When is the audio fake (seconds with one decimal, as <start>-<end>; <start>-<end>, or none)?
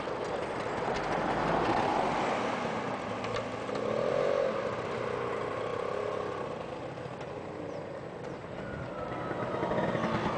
none